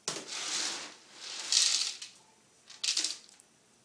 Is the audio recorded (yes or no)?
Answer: yes